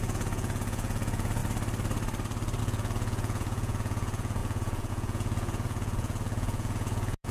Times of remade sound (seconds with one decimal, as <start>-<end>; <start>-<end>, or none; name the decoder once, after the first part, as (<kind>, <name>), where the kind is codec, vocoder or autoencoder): 0.0-1.4 (vocoder, Vocos); 2.6-7.3